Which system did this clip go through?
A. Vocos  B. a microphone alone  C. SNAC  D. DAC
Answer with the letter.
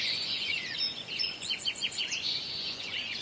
A